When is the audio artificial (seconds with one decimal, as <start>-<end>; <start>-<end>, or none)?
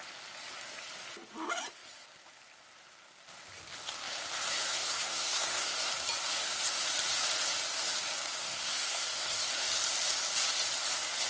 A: 4.7-5.9; 8.4-9.5